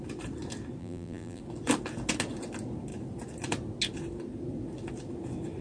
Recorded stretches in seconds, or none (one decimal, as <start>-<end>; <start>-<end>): 0.0-0.8; 1.4-5.6